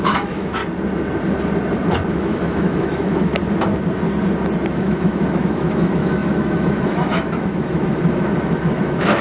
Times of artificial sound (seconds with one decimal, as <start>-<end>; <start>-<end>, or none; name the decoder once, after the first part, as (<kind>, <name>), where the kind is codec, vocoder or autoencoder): 0.0-0.6 (autoencoder, DAC-VAE); 2.1-3.3; 4.7-9.2